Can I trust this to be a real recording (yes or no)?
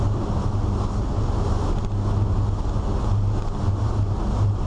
yes